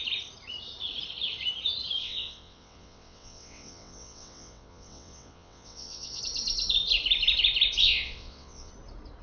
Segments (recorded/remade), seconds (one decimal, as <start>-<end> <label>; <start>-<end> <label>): 0.0-2.0 recorded; 2.0-6.2 remade; 6.2-7.8 recorded; 7.8-8.7 remade; 8.7-9.2 recorded